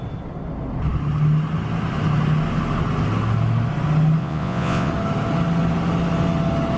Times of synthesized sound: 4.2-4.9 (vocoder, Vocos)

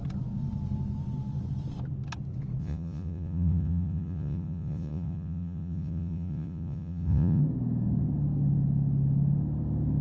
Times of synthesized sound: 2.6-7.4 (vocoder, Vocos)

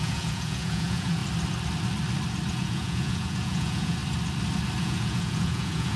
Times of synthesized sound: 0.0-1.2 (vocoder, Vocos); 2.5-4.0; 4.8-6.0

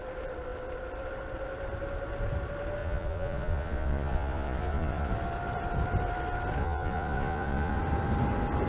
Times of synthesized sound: 2.8-5.1 (vocoder, Vocos); 6.6-7.8

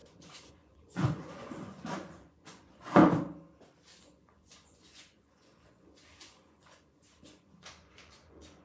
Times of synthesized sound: 0.0-3.0 (vocoder, Vocos); 4.0-8.6

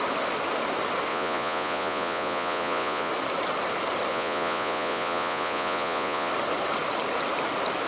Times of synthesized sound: 1.1-3.1 (vocoder, Vocos); 4.1-6.3